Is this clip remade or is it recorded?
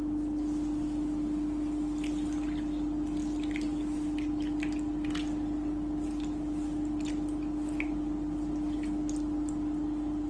recorded